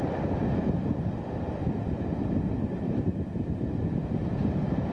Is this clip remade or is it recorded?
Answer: recorded